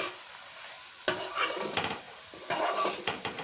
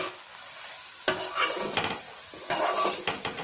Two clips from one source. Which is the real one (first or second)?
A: second